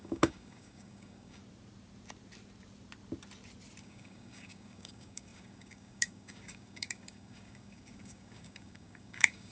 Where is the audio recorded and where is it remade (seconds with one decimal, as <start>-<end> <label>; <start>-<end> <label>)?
0.0-1.4 remade; 1.4-3.8 recorded; 3.8-9.5 remade